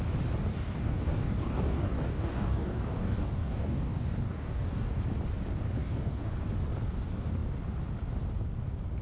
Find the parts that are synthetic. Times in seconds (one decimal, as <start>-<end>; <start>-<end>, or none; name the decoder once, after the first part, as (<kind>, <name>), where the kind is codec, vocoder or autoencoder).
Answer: 0.5-5.0 (codec, DAC); 5.8-6.3